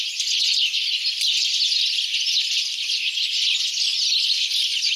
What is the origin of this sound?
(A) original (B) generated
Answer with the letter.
A